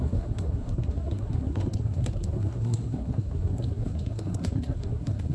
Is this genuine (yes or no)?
no